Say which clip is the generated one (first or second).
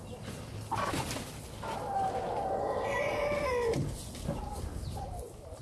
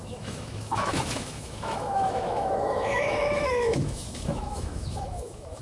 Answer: second